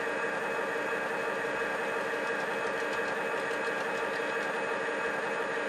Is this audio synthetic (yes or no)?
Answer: no